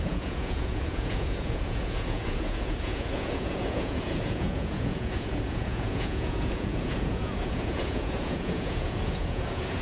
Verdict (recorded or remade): remade